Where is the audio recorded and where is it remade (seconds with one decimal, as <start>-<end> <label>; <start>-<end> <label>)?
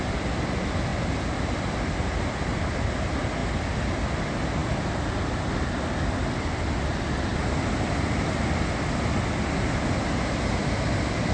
0.0-11.3 recorded